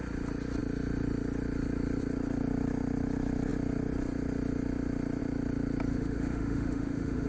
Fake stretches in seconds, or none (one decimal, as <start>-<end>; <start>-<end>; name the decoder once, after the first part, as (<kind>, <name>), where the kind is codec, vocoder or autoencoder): 5.9-7.3 (autoencoder, DAC-VAE)